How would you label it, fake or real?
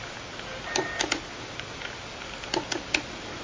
real